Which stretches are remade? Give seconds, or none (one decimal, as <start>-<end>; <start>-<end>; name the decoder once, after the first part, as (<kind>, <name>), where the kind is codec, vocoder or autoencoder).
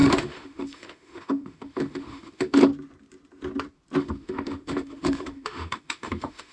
0.0-2.7 (autoencoder, DAC-VAE); 4.0-6.5